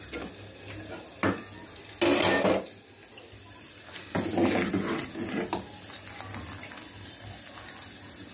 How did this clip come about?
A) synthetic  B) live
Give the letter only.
B